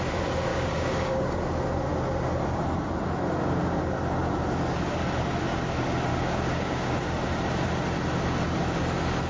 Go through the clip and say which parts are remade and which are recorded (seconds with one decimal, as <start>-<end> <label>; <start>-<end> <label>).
0.0-0.5 recorded; 0.5-1.2 remade; 1.2-6.1 recorded; 6.1-7.0 remade; 7.0-9.3 recorded